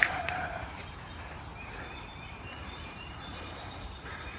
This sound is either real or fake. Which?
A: fake